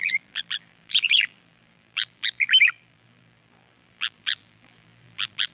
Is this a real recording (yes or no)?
no